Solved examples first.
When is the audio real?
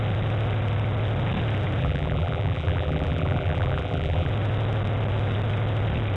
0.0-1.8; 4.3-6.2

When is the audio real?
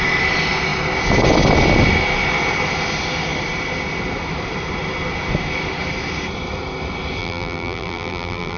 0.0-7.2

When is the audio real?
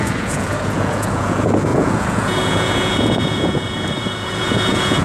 none